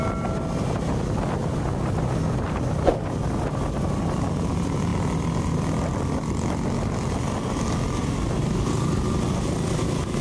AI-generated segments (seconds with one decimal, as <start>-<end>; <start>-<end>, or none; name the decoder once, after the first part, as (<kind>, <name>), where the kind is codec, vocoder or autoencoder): 8.0-9.0 (vocoder, BigVGAN v2)